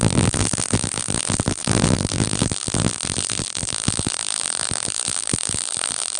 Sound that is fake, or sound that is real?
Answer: fake